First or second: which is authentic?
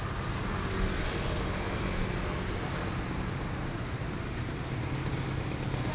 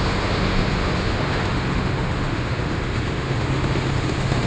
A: first